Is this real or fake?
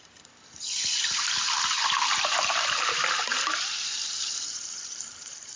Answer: fake